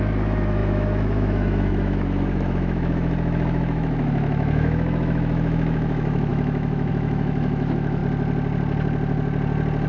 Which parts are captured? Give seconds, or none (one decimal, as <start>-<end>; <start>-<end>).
8.0-9.9